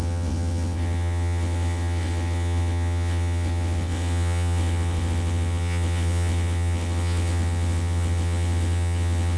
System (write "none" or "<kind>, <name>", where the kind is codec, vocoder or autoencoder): vocoder, WaveNeXt